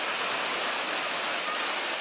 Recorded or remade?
recorded